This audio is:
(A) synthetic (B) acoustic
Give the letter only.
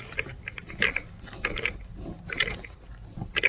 B